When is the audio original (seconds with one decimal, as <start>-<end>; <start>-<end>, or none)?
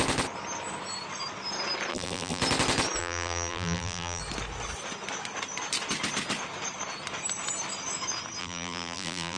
0.0-1.9; 2.4-3.0; 4.2-8.4